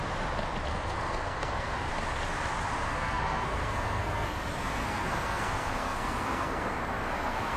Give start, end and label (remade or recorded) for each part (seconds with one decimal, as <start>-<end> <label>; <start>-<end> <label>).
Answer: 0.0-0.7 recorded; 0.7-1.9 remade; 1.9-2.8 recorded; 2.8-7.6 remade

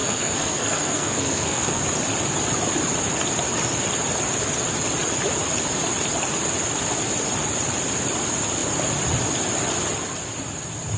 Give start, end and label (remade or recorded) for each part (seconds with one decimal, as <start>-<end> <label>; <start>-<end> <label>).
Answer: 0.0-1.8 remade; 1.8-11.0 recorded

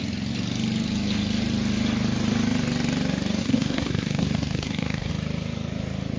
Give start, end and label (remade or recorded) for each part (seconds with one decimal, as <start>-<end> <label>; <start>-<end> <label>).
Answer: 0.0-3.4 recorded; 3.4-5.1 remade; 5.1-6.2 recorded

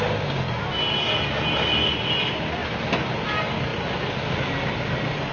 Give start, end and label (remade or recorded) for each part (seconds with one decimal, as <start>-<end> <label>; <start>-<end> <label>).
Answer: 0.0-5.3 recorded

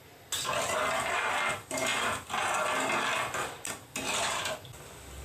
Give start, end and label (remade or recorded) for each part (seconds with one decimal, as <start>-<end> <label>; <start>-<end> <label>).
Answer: 0.0-5.2 recorded

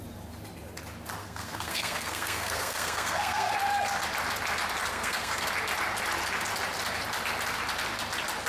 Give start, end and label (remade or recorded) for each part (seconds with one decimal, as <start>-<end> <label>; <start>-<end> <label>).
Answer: 0.0-1.2 recorded; 1.2-3.5 remade; 3.5-4.9 recorded; 4.9-5.5 remade; 5.5-8.5 recorded

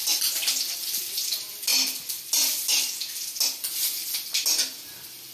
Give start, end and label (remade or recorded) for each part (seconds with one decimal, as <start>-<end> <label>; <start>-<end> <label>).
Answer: 0.0-5.3 recorded

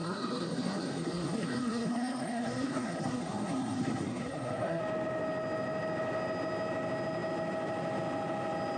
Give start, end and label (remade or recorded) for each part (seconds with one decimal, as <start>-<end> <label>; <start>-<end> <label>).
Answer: 0.0-4.8 remade; 4.8-8.8 recorded